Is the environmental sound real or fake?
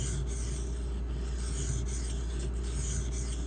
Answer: real